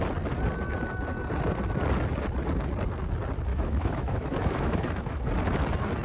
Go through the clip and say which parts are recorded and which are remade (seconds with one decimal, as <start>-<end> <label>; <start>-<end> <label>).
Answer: 0.0-3.5 recorded; 3.5-5.2 remade; 5.2-6.0 recorded